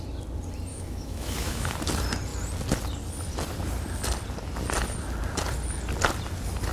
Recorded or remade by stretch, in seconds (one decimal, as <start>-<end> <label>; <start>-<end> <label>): 0.0-0.7 recorded; 0.7-1.7 remade; 1.7-6.7 recorded